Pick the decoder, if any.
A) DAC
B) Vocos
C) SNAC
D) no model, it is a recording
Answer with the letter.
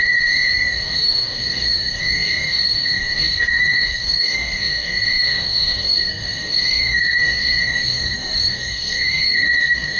A